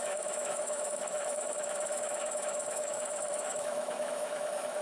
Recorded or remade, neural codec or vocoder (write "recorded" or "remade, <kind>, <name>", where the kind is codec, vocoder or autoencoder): remade, autoencoder, DAC-VAE